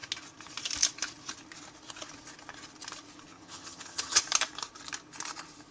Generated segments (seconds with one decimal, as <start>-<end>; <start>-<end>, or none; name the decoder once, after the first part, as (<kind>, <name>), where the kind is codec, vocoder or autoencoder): 3.3-4.2 (vocoder, HiFi-GAN)